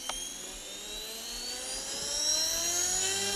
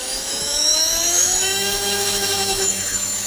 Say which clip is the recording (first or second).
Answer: first